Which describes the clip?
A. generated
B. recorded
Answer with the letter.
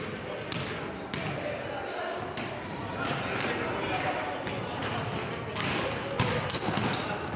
B